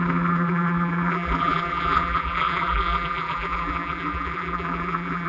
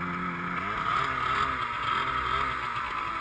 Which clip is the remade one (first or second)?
first